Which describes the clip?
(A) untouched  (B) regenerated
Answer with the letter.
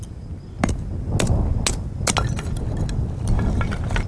A